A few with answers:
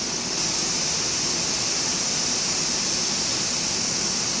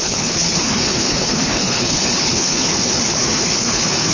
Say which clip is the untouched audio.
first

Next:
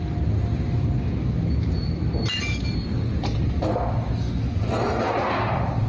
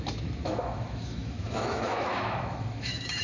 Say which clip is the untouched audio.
first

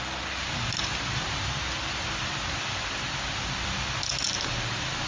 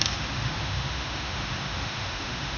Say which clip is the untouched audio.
first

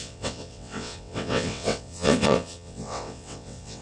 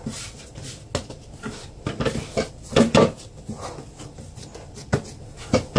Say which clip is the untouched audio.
second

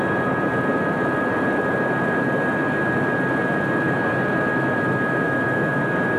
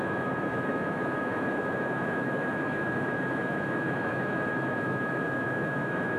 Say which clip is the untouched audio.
first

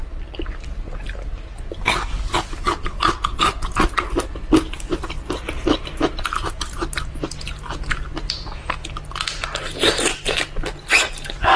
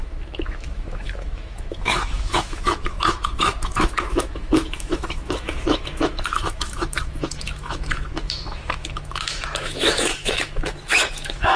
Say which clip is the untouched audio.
first